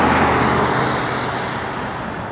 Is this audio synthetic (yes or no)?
no